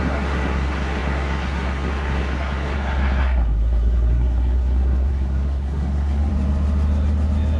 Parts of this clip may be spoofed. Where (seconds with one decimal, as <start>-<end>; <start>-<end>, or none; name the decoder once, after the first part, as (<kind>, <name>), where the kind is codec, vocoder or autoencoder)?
0.0-6.3 (codec, SNAC)